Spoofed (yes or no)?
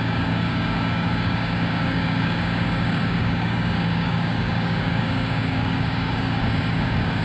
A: yes